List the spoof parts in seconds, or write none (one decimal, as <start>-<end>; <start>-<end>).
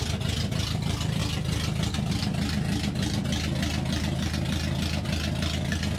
none